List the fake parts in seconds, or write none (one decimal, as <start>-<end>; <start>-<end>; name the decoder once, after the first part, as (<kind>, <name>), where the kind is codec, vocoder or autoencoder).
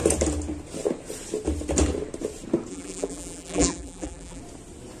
2.7-4.4 (vocoder, BigVGAN v2)